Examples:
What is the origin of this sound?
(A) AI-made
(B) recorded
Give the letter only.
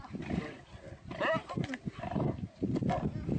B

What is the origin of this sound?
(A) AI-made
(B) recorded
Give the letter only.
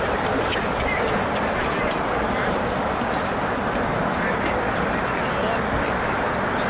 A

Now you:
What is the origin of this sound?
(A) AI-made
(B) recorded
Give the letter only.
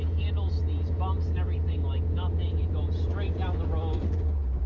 B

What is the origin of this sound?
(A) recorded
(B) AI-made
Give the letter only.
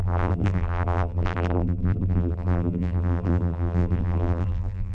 B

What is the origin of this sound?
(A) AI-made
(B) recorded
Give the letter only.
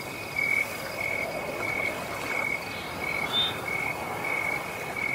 B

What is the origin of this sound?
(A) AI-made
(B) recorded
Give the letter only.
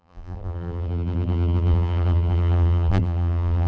A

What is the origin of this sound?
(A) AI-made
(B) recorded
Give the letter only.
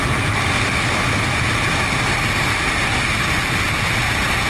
B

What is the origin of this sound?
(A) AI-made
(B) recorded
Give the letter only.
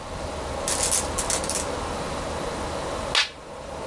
B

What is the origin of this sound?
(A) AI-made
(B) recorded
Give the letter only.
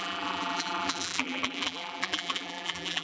A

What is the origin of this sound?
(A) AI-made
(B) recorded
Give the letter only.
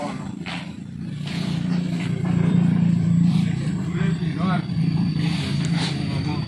A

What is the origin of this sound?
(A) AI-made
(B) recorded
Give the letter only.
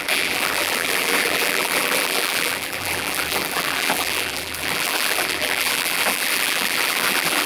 A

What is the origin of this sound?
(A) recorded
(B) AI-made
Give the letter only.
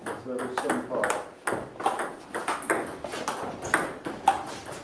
A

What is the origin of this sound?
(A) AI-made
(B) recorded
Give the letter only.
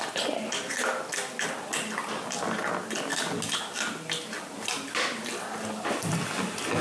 B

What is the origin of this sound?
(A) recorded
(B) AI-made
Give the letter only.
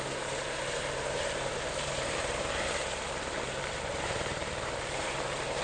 B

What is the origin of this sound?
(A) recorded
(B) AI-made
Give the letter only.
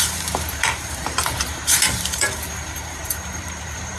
B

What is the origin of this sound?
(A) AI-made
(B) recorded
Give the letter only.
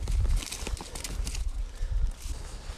B